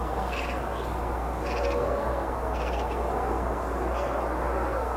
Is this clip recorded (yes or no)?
no